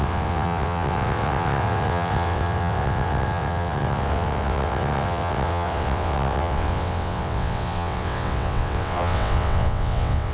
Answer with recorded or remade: remade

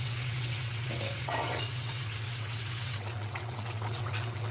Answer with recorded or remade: remade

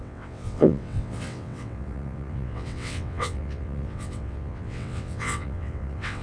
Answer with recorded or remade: remade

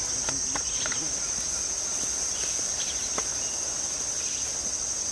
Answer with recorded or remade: recorded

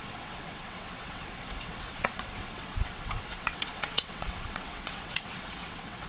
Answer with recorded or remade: remade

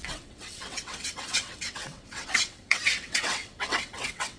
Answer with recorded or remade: remade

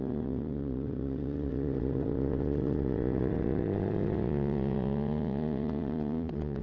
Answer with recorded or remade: remade